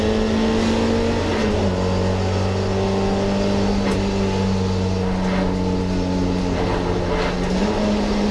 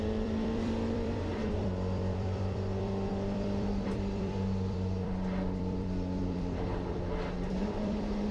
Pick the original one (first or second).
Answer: first